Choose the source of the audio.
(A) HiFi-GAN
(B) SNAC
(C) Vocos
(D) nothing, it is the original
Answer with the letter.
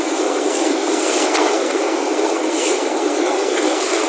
B